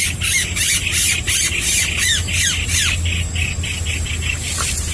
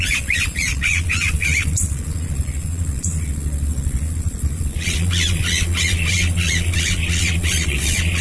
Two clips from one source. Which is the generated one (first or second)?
second